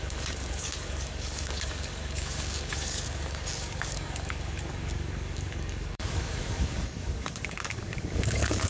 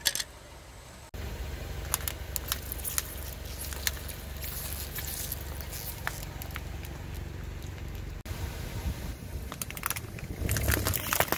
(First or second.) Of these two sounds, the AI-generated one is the first